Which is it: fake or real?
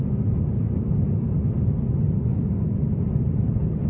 real